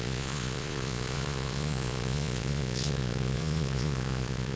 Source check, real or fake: fake